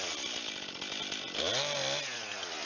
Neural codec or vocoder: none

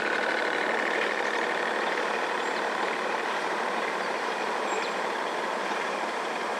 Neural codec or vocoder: vocoder, BigVGAN v2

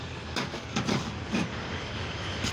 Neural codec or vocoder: codec, DAC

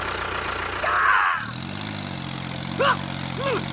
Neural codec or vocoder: none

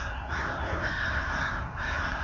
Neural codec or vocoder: codec, SNAC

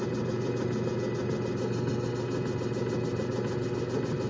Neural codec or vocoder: none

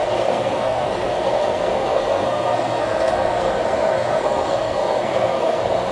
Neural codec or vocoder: codec, SNAC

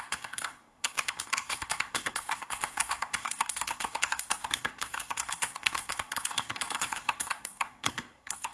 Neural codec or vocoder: codec, SNAC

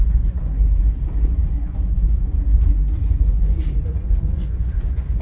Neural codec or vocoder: vocoder, Vocos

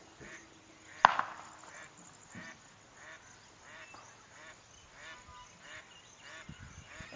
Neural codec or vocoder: none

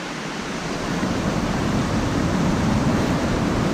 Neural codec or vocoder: vocoder, BigVGAN v2